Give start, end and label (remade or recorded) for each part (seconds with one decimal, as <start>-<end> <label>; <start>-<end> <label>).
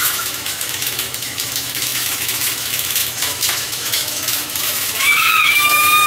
0.0-6.1 remade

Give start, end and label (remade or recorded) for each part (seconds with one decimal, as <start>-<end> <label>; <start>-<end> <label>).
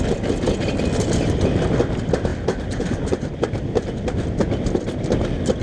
0.0-5.6 recorded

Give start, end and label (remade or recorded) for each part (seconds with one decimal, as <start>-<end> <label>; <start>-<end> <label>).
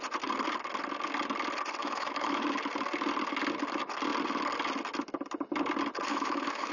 0.0-1.8 recorded; 1.8-2.4 remade; 2.4-6.1 recorded; 6.1-6.7 remade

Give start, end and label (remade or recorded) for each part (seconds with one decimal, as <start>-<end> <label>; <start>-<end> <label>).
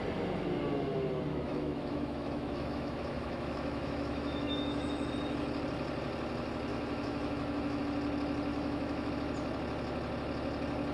0.0-1.3 recorded; 1.3-5.1 remade; 5.1-6.7 recorded; 6.7-7.8 remade; 7.8-8.5 recorded; 8.5-9.1 remade; 9.1-10.9 recorded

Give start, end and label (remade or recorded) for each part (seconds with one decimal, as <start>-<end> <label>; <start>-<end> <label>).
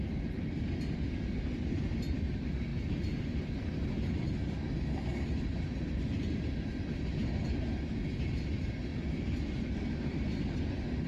0.0-11.1 recorded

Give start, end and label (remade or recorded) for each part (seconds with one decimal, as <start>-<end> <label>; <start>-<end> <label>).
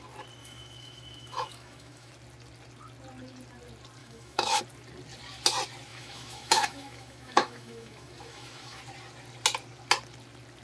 0.0-0.4 recorded; 0.4-2.1 remade; 2.1-4.0 recorded; 4.0-4.6 remade; 4.6-5.9 recorded; 5.9-8.8 remade; 8.8-10.6 recorded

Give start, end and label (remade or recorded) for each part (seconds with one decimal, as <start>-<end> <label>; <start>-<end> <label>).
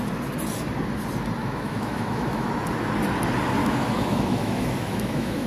0.0-1.4 recorded; 1.4-2.5 remade; 2.5-3.6 recorded; 3.6-5.5 remade